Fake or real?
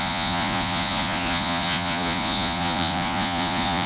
fake